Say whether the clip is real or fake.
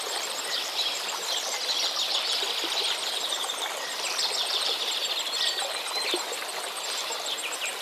fake